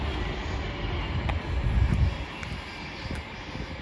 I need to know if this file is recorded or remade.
recorded